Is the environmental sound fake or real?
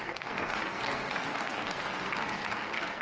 fake